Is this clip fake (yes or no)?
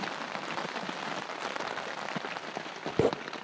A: no